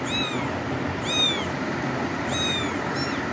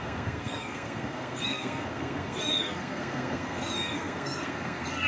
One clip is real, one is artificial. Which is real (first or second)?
first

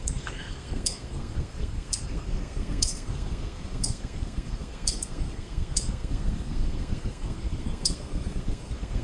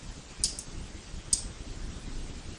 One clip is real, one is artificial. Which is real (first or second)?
second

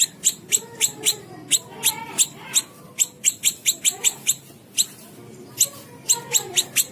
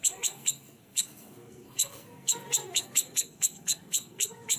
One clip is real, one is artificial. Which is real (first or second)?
first